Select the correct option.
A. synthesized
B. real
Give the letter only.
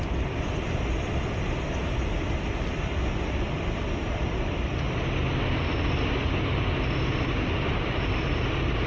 B